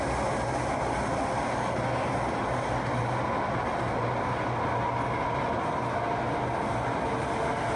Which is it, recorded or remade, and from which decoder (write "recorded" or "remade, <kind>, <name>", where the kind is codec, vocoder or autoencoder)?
recorded